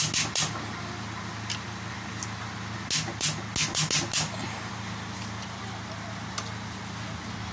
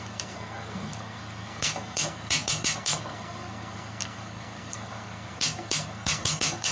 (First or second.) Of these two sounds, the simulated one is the second